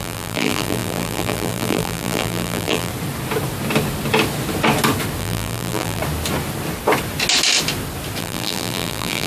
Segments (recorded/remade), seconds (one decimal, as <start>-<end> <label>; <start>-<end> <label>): 0.0-2.9 remade; 2.9-5.2 recorded; 5.2-6.0 remade; 6.0-8.2 recorded; 8.2-9.3 remade